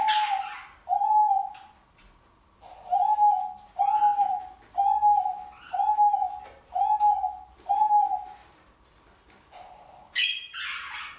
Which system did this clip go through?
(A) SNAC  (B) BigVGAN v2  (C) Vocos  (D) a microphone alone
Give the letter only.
D